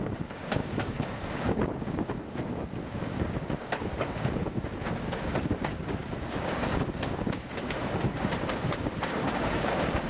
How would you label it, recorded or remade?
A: remade